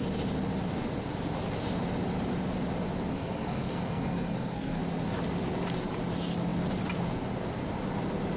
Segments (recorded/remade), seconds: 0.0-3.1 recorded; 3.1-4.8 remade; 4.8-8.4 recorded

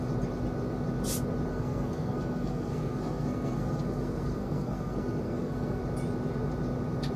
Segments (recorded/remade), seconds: 0.0-1.5 recorded; 1.5-5.8 remade; 5.8-7.2 recorded

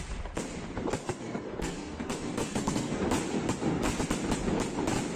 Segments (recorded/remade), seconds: 0.0-1.0 recorded; 1.0-3.0 remade; 3.0-5.2 recorded

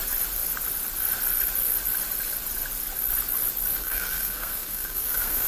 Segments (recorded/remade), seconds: 0.0-3.7 recorded; 3.7-5.5 remade

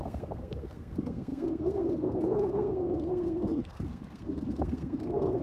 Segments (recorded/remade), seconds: 0.0-5.4 remade

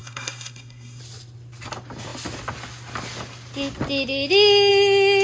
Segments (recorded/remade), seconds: 0.0-1.0 remade; 1.0-5.2 recorded